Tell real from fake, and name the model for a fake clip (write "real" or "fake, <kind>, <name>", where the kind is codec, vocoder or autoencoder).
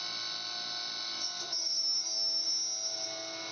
real